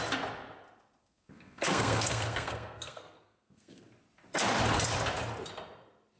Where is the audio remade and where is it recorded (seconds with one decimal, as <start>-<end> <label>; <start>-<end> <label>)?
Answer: 0.0-1.0 recorded; 1.0-3.9 remade; 3.9-6.2 recorded